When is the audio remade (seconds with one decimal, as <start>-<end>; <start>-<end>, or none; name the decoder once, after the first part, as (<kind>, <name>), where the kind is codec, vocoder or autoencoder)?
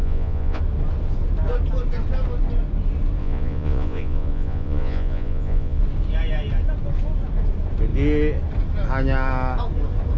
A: 0.0-0.6 (vocoder, Vocos); 3.2-5.8